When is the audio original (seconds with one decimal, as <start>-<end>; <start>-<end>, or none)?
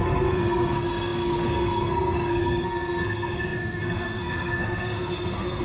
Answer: none